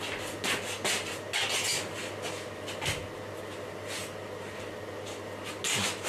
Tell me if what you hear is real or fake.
real